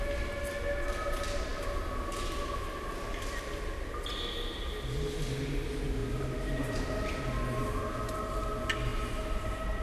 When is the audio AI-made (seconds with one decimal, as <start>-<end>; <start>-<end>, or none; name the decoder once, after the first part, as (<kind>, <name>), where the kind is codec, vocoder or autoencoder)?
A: none